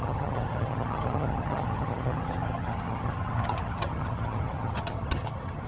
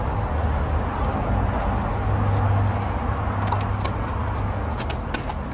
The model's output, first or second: first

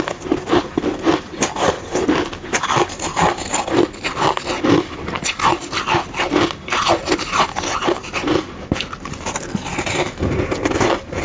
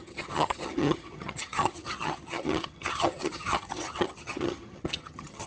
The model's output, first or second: second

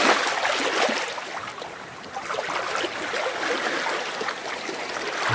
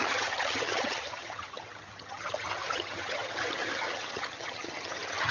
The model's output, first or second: second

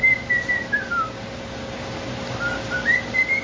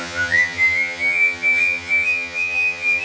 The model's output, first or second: second